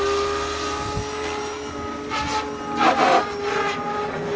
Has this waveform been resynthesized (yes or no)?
no